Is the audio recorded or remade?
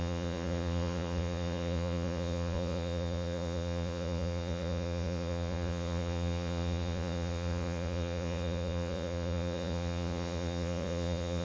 remade